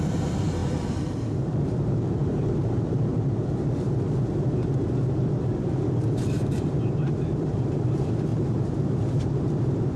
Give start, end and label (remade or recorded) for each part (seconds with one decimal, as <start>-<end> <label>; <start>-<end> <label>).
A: 0.0-3.1 remade; 3.1-6.0 recorded; 6.0-10.0 remade